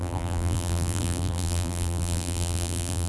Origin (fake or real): fake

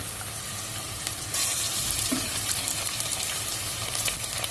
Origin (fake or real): fake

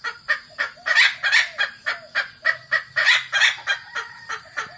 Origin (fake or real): real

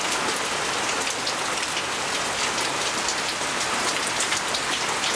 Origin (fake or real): real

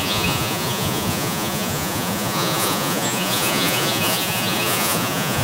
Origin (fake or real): fake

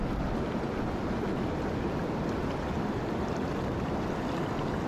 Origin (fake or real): real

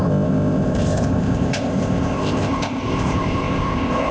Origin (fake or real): fake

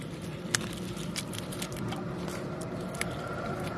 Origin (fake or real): fake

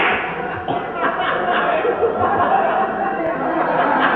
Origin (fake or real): real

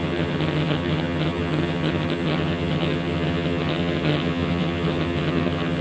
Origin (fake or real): fake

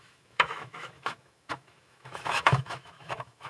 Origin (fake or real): fake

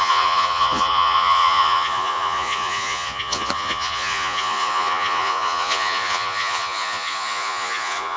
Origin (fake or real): fake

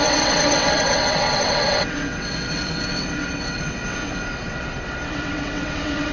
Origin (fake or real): fake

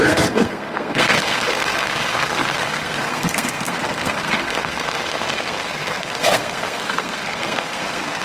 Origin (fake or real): fake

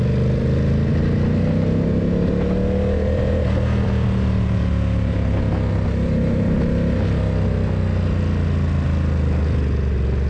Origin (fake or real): real